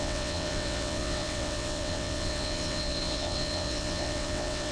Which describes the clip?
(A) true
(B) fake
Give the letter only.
B